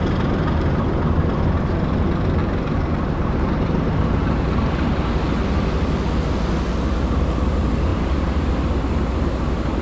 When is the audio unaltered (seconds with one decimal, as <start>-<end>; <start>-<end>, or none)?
0.0-2.4; 5.1-7.9; 8.5-9.8